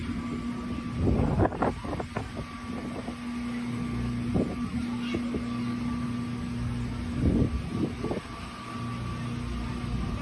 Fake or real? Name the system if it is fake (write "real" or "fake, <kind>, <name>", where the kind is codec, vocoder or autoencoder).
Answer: real